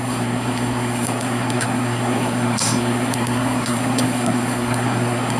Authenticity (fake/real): fake